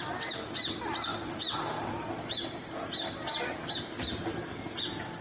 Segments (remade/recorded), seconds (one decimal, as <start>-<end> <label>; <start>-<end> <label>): 0.0-5.2 recorded